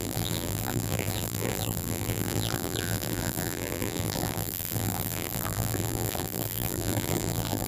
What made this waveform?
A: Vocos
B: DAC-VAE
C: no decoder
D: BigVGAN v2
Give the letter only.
D